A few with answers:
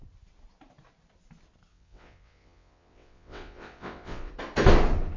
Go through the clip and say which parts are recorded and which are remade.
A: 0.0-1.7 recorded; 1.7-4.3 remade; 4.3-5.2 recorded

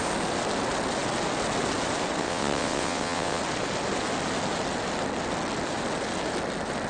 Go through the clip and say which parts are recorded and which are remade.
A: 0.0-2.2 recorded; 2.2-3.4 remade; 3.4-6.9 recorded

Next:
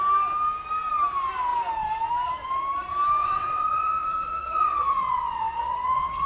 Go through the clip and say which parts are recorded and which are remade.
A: 0.0-3.2 recorded; 3.2-6.3 remade